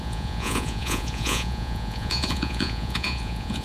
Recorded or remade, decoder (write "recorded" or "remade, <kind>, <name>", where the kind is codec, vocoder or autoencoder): remade, vocoder, Vocos